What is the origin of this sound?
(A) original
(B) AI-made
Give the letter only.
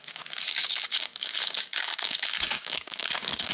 B